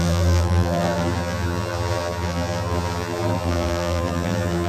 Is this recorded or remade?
remade